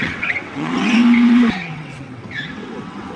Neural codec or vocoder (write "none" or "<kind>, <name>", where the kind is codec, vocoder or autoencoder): vocoder, WaveNeXt